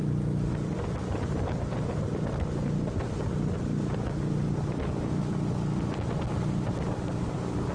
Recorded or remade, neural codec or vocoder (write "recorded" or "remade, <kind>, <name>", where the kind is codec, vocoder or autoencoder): recorded